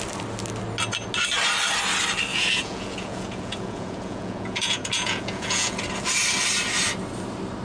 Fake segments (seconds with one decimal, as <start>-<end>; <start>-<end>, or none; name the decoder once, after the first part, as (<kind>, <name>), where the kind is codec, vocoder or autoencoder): 2.3-5.8 (vocoder, Vocos)